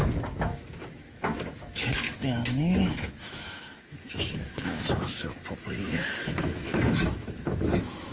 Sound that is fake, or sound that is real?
fake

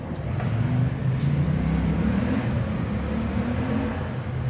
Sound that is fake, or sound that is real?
real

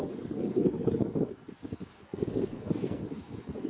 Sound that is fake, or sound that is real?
fake